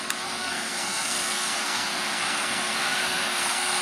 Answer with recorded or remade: remade